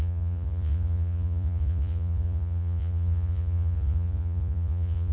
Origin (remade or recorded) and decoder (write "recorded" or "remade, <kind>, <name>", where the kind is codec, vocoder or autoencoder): remade, vocoder, Vocos